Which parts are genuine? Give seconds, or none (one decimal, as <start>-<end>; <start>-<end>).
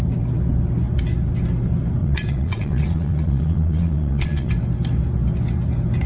0.0-2.0; 4.5-6.1